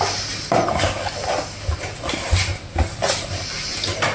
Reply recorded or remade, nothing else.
recorded